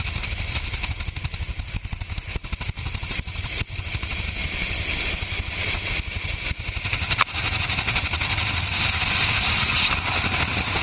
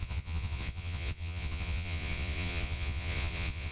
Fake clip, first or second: second